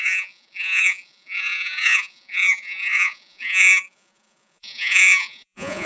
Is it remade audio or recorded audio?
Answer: remade